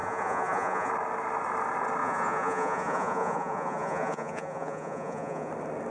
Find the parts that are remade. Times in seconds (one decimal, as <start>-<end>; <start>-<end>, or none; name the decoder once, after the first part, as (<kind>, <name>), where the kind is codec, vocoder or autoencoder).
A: 0.0-0.9 (vocoder, Vocos); 2.0-5.5